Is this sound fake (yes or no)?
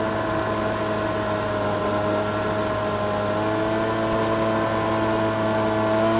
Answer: no